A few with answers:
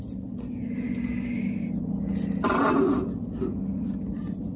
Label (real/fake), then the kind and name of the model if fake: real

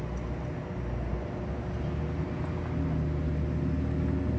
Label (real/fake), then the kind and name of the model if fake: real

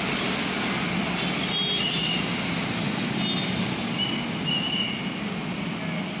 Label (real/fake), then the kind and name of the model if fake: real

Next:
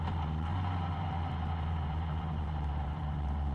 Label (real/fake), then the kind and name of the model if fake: fake, vocoder, BigVGAN v2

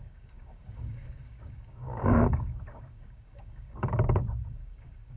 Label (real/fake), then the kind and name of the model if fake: fake, codec, DAC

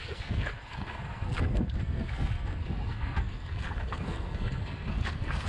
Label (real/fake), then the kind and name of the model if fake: fake, codec, SNAC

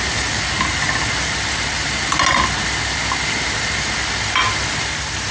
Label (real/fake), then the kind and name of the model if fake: real